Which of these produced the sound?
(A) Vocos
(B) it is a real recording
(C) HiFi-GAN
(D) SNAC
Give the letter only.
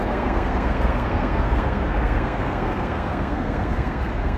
D